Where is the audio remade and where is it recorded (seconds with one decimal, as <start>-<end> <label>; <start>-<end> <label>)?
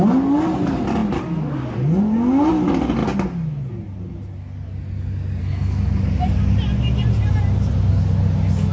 0.0-5.4 recorded; 5.4-6.0 remade; 6.0-8.7 recorded